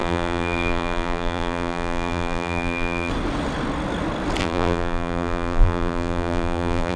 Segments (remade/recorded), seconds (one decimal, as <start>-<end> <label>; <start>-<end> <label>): 0.0-3.1 remade; 3.1-4.4 recorded; 4.4-7.0 remade